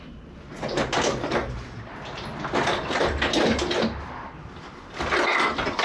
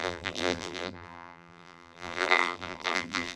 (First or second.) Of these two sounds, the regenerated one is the second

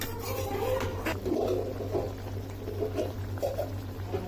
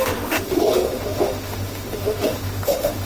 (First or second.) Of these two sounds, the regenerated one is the second